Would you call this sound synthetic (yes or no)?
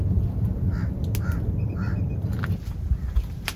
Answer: no